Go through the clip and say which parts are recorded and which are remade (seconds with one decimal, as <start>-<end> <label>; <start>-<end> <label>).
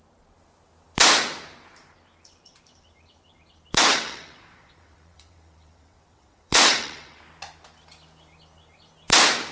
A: 0.0-3.9 recorded; 3.9-7.2 remade; 7.2-9.5 recorded